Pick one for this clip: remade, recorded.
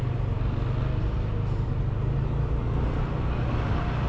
recorded